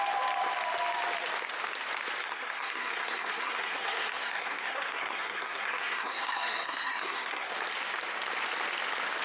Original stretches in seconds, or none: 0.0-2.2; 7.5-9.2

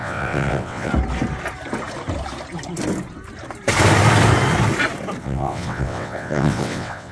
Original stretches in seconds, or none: 0.9-5.2